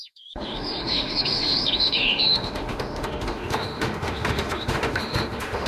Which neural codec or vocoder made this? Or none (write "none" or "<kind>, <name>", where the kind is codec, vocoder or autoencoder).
autoencoder, DAC-VAE